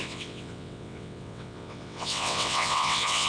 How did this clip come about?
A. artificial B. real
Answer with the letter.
A